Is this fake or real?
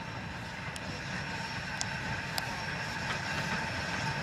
real